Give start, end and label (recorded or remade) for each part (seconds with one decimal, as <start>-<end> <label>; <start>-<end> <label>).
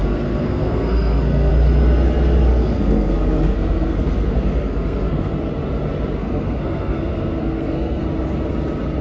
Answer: 0.0-1.5 remade; 1.5-2.5 recorded; 2.5-5.3 remade; 5.3-6.2 recorded; 6.2-8.0 remade; 8.0-9.0 recorded